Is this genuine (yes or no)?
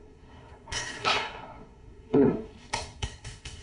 no